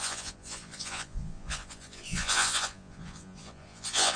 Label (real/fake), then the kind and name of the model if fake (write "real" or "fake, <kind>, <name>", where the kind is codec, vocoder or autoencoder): fake, vocoder, Vocos